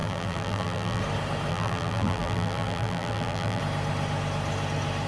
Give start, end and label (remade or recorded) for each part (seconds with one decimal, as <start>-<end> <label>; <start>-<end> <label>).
0.0-1.0 remade; 1.0-1.5 recorded; 1.5-3.6 remade; 3.6-5.1 recorded